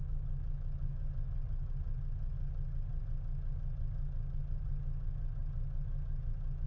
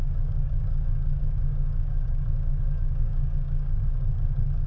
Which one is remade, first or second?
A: second